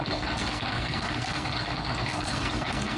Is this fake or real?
fake